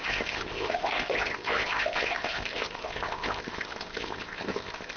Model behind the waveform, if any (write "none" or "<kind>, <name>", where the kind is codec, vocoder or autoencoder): codec, ZipCodec